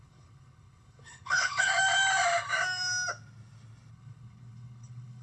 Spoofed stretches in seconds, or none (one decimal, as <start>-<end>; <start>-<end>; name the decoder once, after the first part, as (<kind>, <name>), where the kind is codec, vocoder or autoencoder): 0.0-1.7 (codec, HILCodec); 3.9-5.2

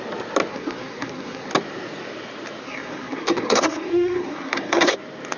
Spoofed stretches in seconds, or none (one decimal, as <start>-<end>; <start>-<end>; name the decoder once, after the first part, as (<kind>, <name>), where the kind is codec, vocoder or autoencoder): 0.5-1.5 (codec, SNAC); 2.6-4.9